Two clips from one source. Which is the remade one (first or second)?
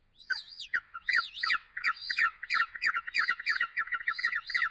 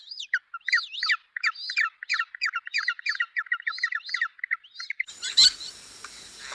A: first